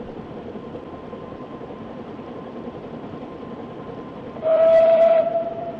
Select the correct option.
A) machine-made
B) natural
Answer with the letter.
A